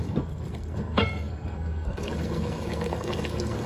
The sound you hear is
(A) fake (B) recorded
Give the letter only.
A